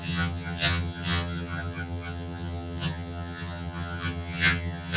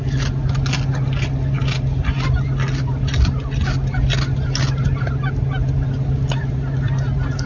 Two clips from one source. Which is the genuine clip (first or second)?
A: second